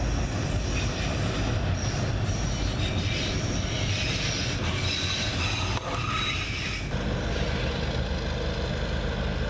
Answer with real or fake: real